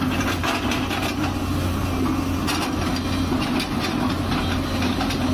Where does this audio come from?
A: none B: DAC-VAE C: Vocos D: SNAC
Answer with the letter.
A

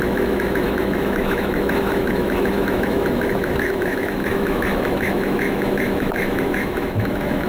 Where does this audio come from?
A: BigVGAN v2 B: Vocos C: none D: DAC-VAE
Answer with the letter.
D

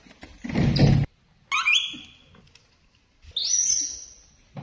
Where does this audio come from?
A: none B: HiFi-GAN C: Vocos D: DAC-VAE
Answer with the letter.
A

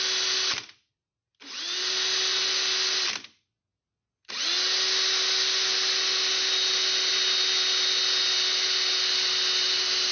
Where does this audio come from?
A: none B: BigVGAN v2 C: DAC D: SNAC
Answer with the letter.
A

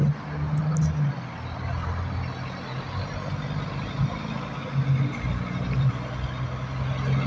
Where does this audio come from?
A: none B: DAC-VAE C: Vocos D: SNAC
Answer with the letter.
A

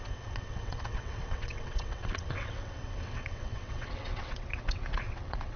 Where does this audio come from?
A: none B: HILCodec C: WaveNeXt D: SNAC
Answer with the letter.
C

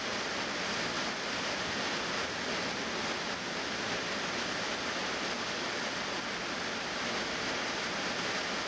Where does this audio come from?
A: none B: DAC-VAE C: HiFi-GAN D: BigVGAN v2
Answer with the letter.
A